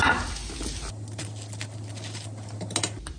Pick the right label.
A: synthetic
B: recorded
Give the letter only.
B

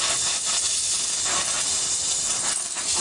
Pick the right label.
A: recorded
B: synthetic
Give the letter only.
A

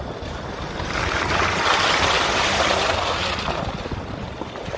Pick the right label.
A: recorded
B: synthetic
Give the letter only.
A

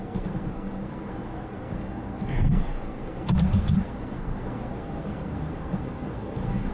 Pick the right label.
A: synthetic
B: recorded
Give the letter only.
A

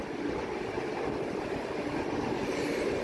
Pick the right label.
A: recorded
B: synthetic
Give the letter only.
A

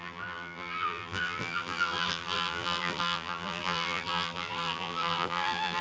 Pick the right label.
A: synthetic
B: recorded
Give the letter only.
A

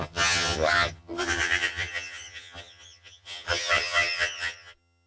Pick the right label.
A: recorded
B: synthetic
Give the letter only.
B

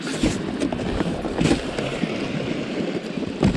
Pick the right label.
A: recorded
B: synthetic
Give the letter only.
A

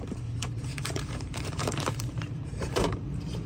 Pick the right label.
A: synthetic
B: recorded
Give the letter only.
A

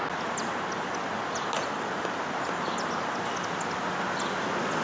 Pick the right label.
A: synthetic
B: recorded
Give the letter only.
B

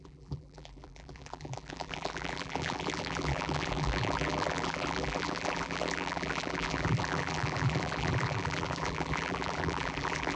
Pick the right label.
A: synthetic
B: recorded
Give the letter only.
A